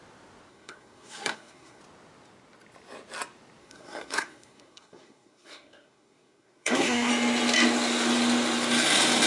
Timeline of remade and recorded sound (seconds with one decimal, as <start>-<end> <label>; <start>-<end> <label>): 0.0-0.5 recorded; 0.5-1.8 remade; 1.8-3.6 recorded; 3.6-7.1 remade; 7.1-9.3 recorded